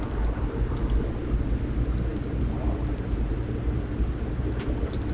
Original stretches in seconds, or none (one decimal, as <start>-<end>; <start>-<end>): 0.0-5.1